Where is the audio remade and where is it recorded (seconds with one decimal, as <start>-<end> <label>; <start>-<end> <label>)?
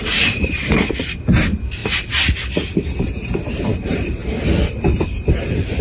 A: 0.0-1.8 remade; 1.8-3.5 recorded; 3.5-4.2 remade; 4.2-4.7 recorded; 4.7-5.8 remade